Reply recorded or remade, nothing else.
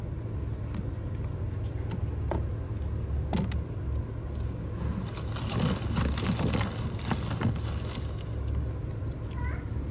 recorded